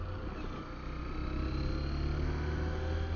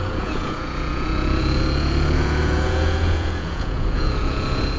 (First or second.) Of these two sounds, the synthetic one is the second